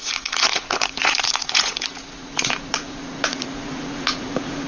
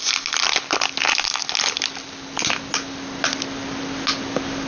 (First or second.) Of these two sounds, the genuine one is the second